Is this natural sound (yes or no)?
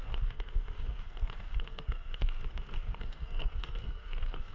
no